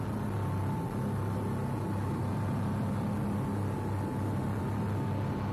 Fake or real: real